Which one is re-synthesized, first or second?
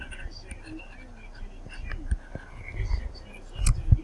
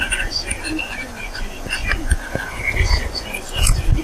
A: second